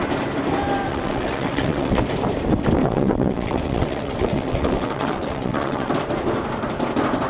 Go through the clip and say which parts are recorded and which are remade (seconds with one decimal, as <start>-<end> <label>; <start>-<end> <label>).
0.0-0.9 recorded; 0.9-2.0 remade; 2.0-2.8 recorded; 2.8-5.9 remade; 5.9-7.3 recorded